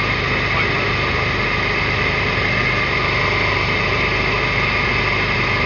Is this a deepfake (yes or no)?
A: no